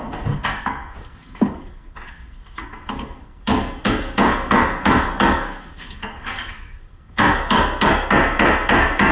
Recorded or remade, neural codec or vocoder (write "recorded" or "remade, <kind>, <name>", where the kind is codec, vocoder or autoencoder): remade, codec, SNAC